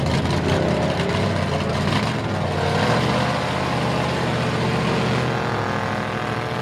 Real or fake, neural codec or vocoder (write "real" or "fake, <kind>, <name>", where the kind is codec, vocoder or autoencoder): real